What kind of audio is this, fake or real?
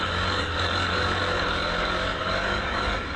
fake